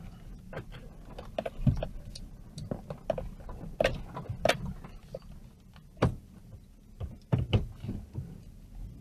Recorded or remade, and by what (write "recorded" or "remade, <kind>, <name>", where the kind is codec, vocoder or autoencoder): recorded